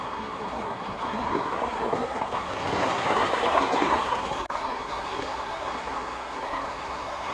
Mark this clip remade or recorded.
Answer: remade